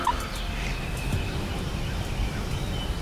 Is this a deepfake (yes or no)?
no